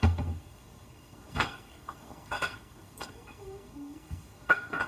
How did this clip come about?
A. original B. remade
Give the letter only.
B